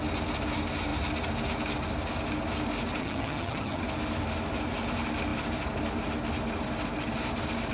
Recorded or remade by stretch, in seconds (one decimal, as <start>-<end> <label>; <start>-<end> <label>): 0.0-3.0 recorded; 3.0-3.8 remade; 3.8-7.7 recorded

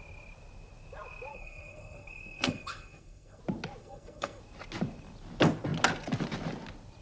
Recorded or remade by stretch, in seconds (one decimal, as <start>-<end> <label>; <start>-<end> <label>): 0.0-1.3 recorded; 1.3-3.4 remade; 3.4-3.8 recorded; 3.8-4.4 remade; 4.4-7.0 recorded

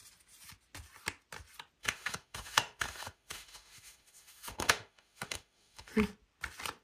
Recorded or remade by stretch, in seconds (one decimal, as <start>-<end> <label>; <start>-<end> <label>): 0.0-1.8 recorded; 1.8-5.9 remade; 5.9-6.8 recorded

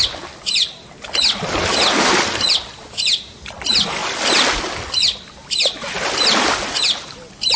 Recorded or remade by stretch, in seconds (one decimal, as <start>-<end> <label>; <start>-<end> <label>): 0.0-7.6 recorded

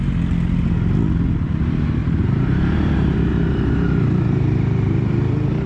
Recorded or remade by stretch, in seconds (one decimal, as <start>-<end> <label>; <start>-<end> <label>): 0.0-2.0 recorded; 2.0-5.7 remade